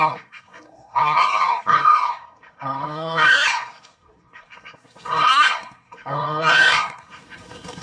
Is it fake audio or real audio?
fake